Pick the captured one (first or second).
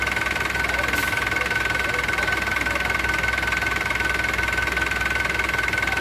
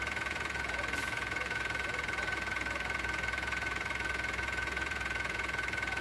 first